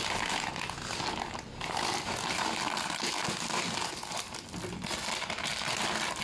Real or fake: real